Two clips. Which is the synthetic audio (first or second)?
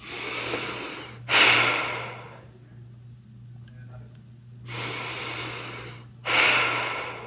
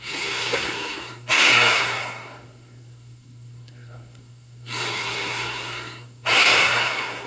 second